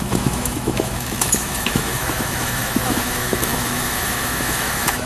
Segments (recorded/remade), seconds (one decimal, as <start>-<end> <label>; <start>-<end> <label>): 0.0-5.1 remade